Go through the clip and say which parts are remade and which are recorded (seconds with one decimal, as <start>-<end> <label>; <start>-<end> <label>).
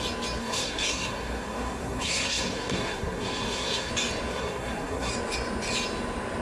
0.0-0.4 recorded; 0.4-3.9 remade; 3.9-4.3 recorded; 4.3-5.1 remade; 5.1-6.4 recorded